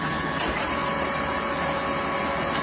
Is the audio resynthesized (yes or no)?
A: no